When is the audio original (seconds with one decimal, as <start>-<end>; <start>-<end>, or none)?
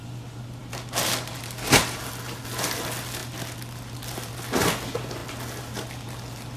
0.0-6.6